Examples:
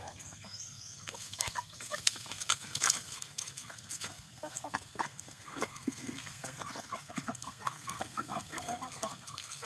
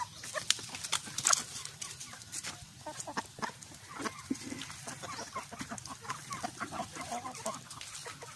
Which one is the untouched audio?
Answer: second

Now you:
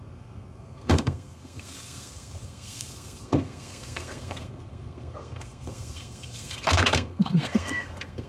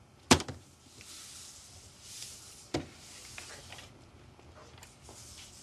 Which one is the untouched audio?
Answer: second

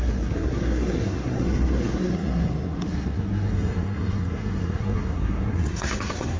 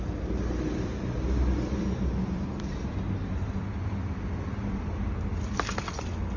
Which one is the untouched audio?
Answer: second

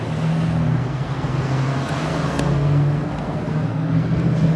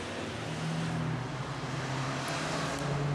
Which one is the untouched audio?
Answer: second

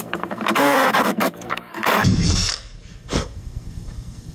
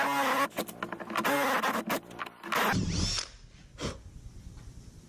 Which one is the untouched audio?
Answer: second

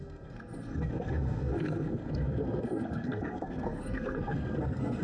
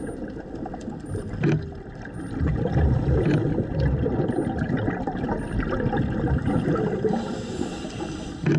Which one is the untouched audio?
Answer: second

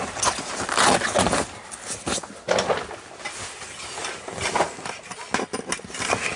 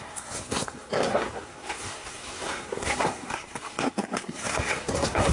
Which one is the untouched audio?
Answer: first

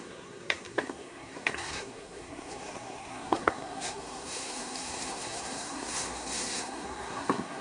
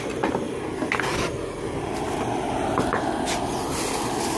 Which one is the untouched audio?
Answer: second